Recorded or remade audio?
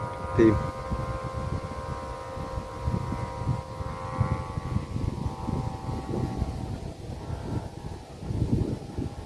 recorded